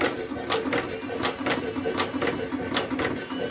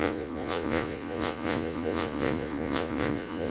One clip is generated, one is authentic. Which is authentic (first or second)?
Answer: first